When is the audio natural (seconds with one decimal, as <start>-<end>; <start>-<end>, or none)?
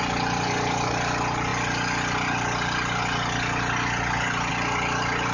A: 0.0-5.3